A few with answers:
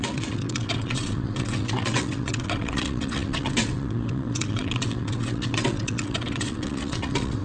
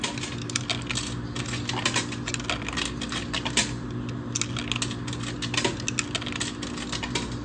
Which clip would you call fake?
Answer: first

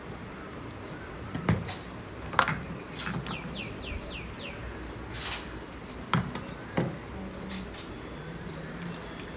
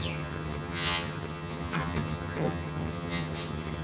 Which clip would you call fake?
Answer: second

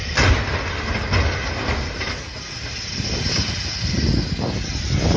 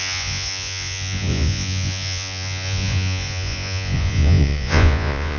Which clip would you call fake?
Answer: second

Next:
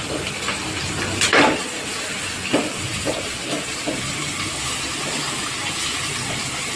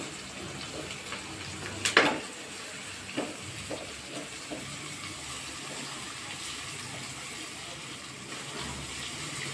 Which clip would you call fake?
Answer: first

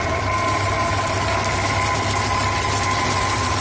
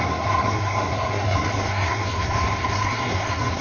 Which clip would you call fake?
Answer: second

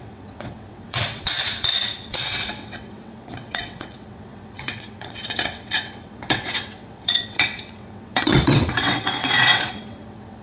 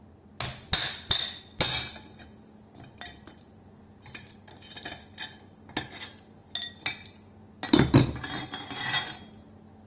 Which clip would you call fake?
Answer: first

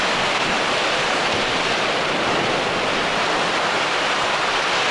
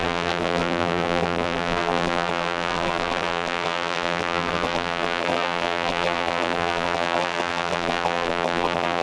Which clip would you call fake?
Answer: second